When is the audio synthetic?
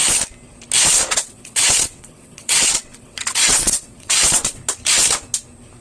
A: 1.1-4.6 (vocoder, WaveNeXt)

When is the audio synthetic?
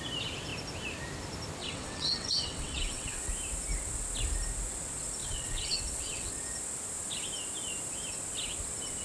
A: 1.6-3.3 (vocoder, WaveNeXt); 5.2-6.3